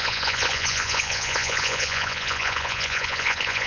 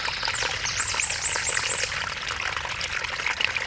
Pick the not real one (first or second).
first